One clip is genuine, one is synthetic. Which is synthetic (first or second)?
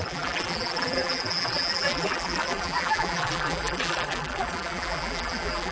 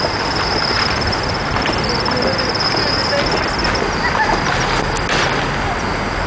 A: first